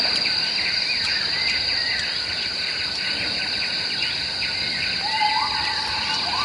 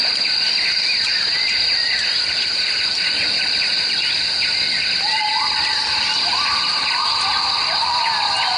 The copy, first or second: second